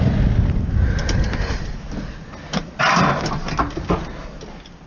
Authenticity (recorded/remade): recorded